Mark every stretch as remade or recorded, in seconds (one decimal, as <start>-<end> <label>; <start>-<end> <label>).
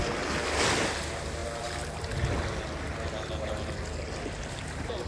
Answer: 0.0-5.1 recorded